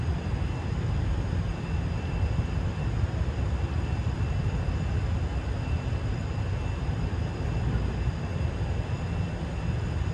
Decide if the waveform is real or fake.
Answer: fake